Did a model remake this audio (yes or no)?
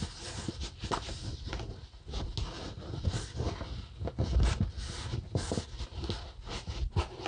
no